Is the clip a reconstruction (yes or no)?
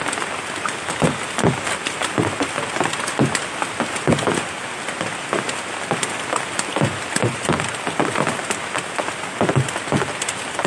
no